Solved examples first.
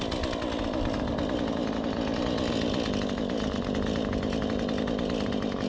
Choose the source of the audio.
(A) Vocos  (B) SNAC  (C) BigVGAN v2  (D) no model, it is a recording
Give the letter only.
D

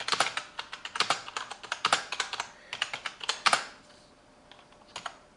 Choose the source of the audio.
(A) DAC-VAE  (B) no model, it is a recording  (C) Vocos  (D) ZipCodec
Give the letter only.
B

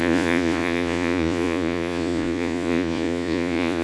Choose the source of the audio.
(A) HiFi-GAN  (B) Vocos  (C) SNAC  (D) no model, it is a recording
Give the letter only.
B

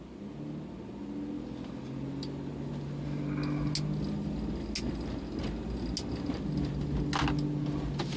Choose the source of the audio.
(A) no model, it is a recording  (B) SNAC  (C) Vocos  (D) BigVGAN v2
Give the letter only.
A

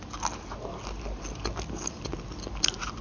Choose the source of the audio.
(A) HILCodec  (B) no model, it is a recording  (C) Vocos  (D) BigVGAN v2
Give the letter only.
B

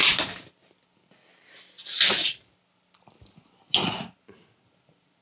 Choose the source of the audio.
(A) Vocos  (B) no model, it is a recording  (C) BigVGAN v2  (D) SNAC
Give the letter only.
B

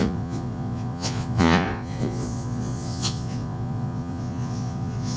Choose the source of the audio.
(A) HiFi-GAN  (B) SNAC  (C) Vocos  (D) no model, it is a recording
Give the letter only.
C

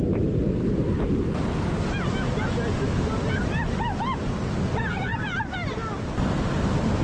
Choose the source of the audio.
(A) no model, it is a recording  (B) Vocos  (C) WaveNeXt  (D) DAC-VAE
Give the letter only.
A